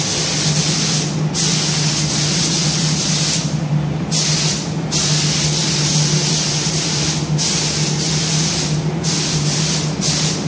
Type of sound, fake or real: real